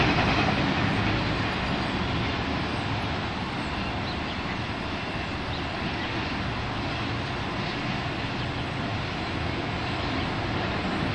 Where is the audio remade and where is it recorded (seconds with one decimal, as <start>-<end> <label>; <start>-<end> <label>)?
0.0-11.1 recorded